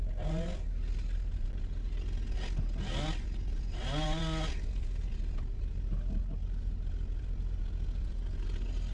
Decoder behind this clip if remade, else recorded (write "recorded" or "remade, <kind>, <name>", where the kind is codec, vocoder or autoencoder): recorded